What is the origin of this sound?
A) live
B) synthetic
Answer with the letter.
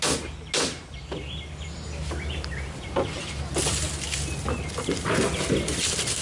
A